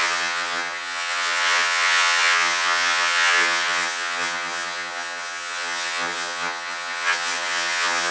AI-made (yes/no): yes